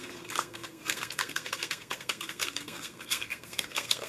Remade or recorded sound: remade